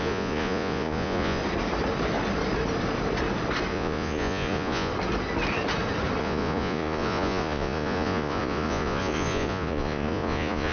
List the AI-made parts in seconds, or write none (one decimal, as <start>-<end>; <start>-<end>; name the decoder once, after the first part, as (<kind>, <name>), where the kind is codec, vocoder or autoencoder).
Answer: 0.0-1.4 (vocoder, Vocos); 3.7-4.9; 6.2-10.7